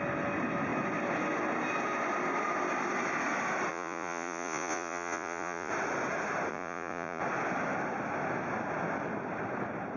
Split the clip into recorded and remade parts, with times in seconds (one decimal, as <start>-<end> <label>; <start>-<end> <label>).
0.0-3.7 recorded; 3.7-5.7 remade; 5.7-6.5 recorded; 6.5-7.2 remade; 7.2-10.0 recorded